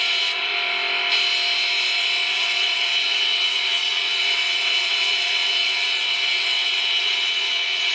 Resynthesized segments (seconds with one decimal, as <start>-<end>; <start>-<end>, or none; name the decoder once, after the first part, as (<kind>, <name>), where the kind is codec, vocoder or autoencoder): 0.0-0.5 (vocoder, WaveNeXt); 2.0-7.9